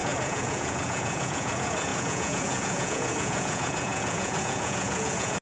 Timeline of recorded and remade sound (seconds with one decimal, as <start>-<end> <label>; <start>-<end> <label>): 0.0-5.4 remade